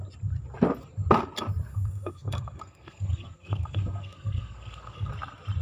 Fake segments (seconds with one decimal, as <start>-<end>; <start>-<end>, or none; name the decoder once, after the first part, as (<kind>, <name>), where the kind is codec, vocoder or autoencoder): 1.7-5.1 (codec, SNAC)